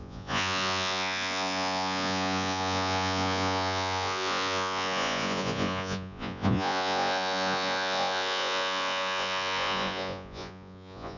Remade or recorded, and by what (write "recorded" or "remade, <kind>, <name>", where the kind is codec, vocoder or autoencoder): remade, vocoder, Vocos